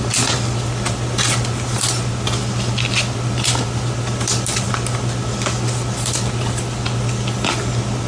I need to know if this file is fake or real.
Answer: real